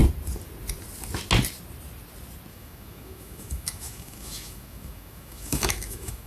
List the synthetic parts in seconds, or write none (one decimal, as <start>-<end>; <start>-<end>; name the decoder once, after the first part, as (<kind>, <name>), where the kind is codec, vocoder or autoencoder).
2.5-6.3 (autoencoder, DAC-VAE)